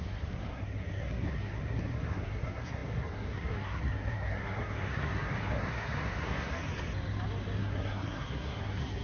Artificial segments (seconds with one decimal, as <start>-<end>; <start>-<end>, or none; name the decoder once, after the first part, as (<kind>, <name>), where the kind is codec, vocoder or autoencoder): 0.0-6.7 (codec, SNAC); 7.6-9.0